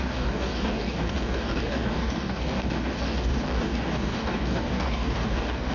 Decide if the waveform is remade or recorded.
remade